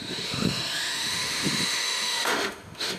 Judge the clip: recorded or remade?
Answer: remade